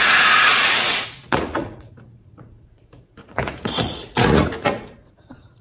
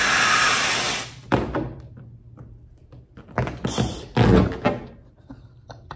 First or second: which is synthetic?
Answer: first